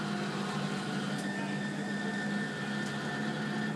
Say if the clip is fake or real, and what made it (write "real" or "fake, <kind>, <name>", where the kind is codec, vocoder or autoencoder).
real